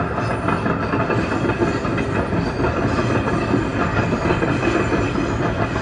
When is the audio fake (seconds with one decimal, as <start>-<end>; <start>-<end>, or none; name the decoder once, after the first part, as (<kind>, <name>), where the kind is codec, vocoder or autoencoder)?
none